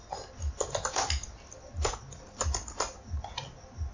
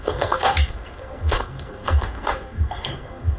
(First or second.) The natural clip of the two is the first